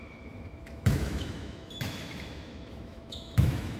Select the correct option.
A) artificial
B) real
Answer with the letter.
A